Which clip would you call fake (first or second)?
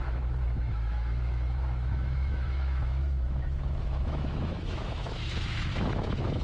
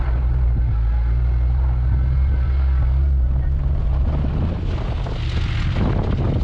first